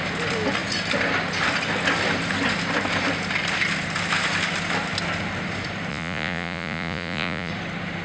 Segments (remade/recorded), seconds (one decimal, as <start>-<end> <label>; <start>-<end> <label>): 0.0-5.9 recorded; 5.9-7.5 remade; 7.5-8.0 recorded